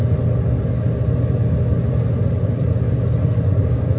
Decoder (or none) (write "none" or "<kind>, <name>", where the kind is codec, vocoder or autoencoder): none